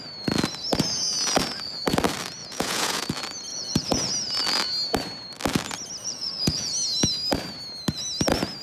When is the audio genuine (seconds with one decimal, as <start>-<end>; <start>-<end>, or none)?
0.0-2.4; 3.1-3.5; 4.1-6.0; 6.7-8.6